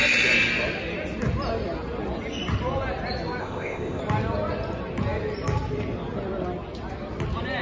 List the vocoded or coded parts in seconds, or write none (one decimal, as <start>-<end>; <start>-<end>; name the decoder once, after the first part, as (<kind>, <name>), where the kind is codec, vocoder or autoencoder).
3.4-4.0 (codec, ZipCodec)